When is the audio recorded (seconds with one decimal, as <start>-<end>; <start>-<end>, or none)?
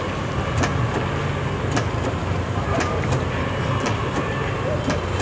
0.0-2.2; 4.5-5.2